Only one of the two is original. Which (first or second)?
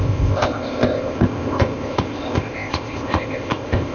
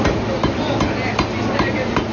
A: second